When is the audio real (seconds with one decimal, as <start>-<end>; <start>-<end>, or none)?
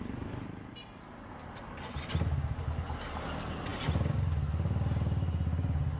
0.0-6.0